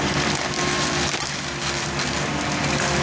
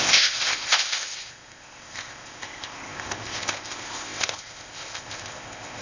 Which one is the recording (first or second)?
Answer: first